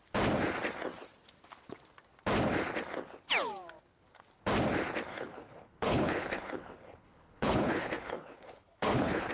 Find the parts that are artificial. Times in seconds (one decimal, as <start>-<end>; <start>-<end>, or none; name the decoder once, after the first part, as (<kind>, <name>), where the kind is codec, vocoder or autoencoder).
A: 5.1-9.3 (codec, HILCodec)